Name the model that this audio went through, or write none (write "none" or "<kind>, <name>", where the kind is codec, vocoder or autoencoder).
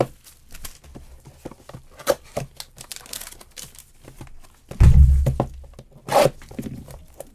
none